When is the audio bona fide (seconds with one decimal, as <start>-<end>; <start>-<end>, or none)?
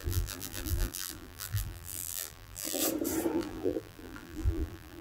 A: 2.8-3.3